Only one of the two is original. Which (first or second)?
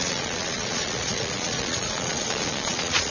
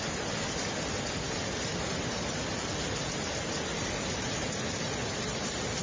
second